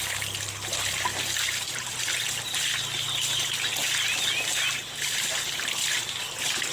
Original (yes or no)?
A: yes